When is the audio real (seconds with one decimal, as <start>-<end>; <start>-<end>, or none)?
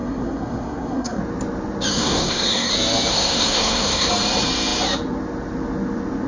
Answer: 1.2-1.9; 2.7-3.1; 4.1-6.3